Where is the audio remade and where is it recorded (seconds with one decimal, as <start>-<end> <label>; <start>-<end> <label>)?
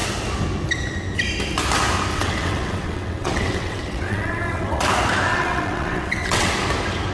0.0-2.1 recorded; 2.1-4.8 remade; 4.8-5.3 recorded; 5.3-6.5 remade; 6.5-7.1 recorded